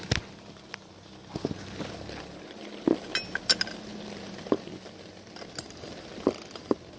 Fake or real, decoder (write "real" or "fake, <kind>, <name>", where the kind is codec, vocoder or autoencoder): real